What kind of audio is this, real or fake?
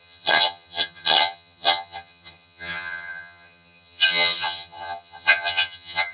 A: fake